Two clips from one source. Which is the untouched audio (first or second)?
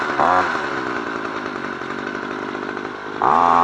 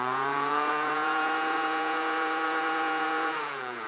first